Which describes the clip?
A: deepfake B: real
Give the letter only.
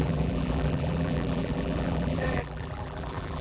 A